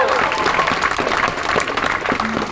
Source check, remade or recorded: recorded